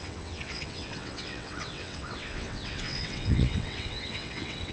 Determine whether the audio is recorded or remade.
remade